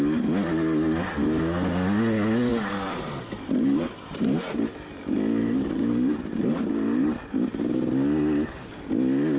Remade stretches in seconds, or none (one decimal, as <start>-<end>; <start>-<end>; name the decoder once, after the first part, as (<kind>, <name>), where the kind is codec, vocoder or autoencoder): 2.5-4.4 (vocoder, BigVGAN v2); 5.4-7.3